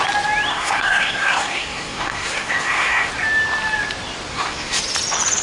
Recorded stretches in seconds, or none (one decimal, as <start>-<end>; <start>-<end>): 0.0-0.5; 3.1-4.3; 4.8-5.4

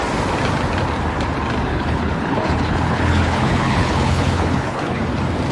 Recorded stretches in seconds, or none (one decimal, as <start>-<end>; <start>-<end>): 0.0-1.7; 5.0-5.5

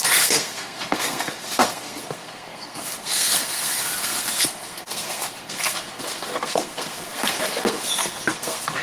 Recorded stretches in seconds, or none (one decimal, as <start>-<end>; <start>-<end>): none

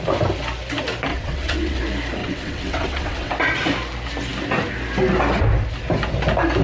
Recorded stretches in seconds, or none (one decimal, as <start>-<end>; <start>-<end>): 0.0-1.1; 1.8-2.2; 3.3-6.6

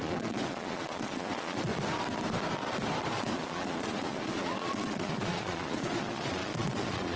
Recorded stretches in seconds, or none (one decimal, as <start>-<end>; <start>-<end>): 1.7-3.1

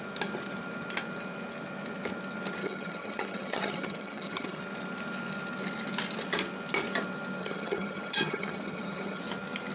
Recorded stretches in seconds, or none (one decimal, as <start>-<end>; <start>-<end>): 0.0-2.6; 4.6-7.4; 9.2-9.7